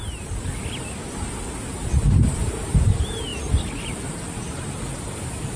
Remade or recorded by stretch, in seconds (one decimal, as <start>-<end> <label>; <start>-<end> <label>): 0.0-3.3 recorded; 3.3-5.6 remade